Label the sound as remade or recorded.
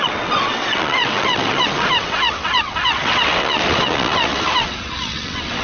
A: remade